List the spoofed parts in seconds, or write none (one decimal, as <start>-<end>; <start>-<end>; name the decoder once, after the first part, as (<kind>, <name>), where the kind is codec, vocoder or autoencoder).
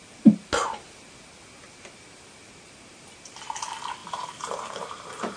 4.0-5.4 (vocoder, BigVGAN v2)